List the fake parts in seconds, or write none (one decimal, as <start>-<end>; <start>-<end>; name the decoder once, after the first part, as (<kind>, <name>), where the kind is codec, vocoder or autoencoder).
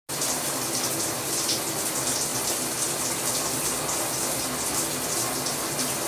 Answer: none